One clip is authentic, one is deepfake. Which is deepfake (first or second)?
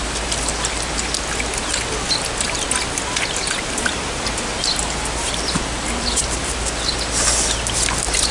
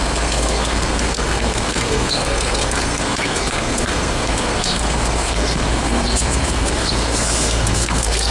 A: second